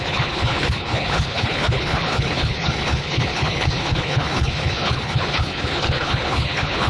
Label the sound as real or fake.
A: fake